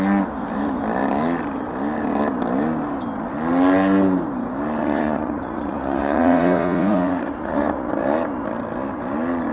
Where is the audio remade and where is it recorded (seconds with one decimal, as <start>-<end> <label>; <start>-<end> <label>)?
0.0-4.8 recorded; 4.8-7.9 remade; 7.9-9.5 recorded